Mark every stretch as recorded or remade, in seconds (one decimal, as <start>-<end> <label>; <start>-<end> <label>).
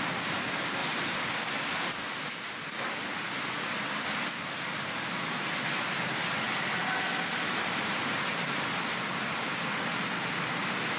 0.0-11.0 recorded